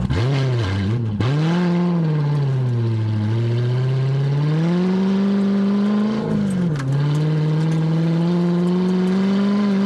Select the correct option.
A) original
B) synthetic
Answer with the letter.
A